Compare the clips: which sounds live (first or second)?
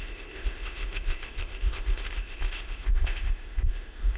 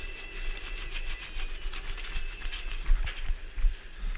second